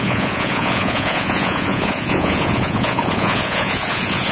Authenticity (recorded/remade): remade